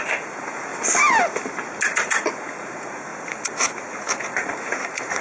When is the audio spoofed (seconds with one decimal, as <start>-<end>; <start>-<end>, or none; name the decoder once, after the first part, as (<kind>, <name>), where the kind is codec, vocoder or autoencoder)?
0.0-0.7 (vocoder, Vocos); 2.3-5.2